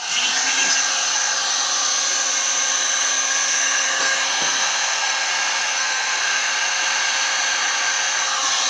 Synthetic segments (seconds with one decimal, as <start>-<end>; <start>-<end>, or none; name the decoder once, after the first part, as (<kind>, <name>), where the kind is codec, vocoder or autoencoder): 3.0-5.3 (codec, SNAC); 5.7-6.5